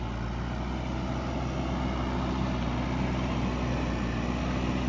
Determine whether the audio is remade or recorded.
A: recorded